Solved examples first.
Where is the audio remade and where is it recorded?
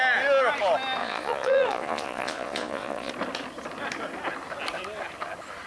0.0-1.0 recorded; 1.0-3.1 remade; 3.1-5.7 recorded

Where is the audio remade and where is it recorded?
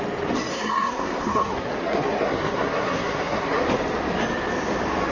0.0-0.5 recorded; 0.5-3.6 remade; 3.6-5.1 recorded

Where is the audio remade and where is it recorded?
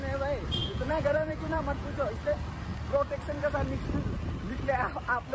0.0-0.6 recorded; 0.6-2.1 remade; 2.1-5.3 recorded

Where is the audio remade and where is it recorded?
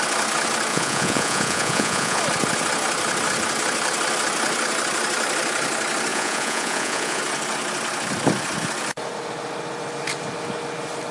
0.0-0.7 recorded; 0.7-2.2 remade; 2.2-6.1 recorded; 6.1-7.2 remade; 7.2-11.1 recorded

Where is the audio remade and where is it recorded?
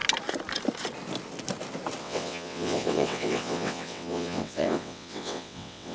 0.0-2.0 recorded; 2.0-5.9 remade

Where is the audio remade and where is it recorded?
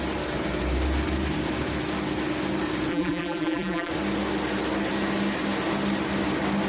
0.0-2.9 recorded; 2.9-3.9 remade; 3.9-6.7 recorded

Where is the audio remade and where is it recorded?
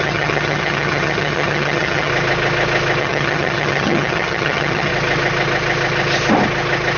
0.0-2.1 remade; 2.1-3.0 recorded; 3.0-4.9 remade; 4.9-7.0 recorded